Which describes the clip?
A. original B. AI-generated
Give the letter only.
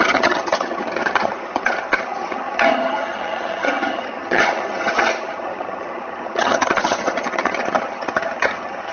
B